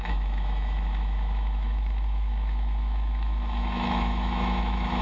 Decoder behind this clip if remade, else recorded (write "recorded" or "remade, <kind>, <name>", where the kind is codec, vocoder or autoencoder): remade, autoencoder, DAC-VAE